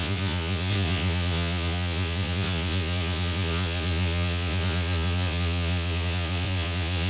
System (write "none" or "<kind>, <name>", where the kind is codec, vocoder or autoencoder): vocoder, Vocos